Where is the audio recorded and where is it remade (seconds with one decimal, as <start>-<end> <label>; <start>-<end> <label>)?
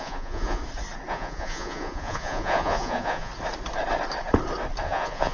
0.0-0.6 remade; 0.6-1.1 recorded; 1.1-3.3 remade; 3.3-4.8 recorded; 4.8-5.3 remade